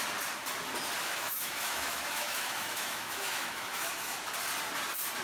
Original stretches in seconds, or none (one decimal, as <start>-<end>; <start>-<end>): 0.0-1.0; 4.1-5.2